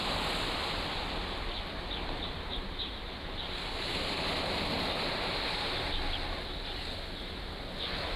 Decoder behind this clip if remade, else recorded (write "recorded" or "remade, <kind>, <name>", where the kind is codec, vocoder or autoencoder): recorded